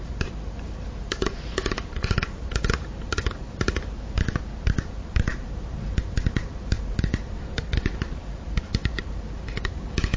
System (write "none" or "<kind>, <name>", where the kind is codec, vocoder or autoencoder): vocoder, BigVGAN v2